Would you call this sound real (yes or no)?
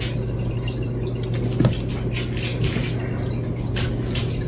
yes